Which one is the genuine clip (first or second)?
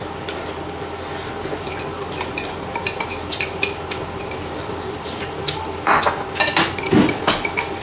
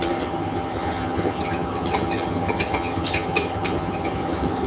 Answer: first